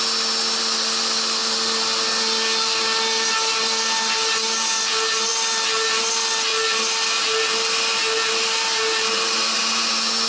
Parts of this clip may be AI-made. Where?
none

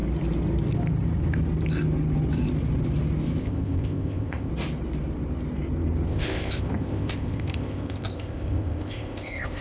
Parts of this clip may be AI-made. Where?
3.4-4.5 (codec, ZipCodec); 6.1-9.6

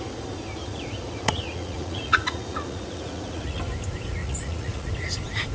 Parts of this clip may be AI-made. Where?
0.6-3.6 (vocoder, Vocos); 4.2-4.9

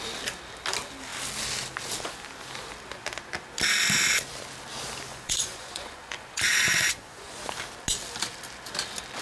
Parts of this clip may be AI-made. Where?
5.1-7.4 (vocoder, Vocos)

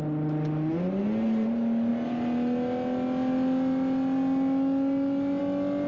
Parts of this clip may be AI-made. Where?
none